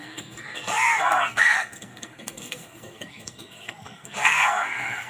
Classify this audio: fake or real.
fake